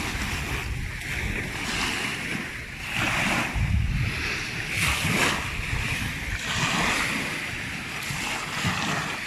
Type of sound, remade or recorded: recorded